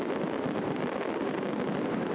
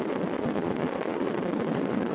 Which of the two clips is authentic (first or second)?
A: first